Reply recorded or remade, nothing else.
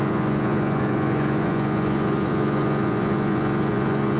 remade